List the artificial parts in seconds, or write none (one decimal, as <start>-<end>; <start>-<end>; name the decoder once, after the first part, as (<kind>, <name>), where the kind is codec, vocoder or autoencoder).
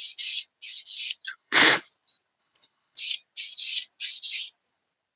1.3-1.9 (codec, HILCodec); 2.4-3.0